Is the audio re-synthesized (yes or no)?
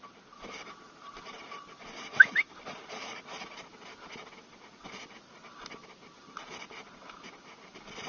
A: no